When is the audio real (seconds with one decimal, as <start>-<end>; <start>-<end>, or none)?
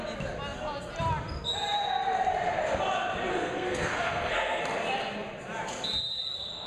0.0-3.3; 4.6-6.7